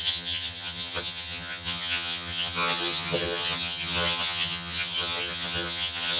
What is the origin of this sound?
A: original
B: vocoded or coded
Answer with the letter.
B